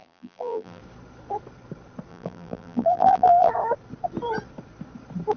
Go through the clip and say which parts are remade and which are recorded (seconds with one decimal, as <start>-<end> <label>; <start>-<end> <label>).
0.0-0.8 remade; 0.8-2.1 recorded; 2.1-3.5 remade; 3.5-5.4 recorded